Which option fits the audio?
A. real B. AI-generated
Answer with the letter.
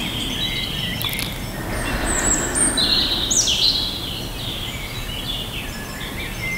A